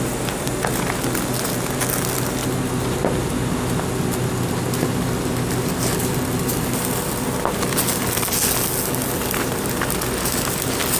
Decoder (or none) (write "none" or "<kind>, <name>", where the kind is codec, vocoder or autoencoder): none